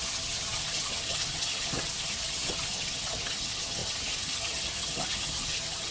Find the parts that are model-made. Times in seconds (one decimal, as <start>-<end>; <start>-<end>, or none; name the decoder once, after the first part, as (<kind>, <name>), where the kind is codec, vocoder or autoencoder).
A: 0.0-5.9 (vocoder, HiFi-GAN)